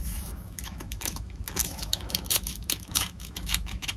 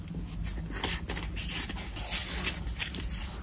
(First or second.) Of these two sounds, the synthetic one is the first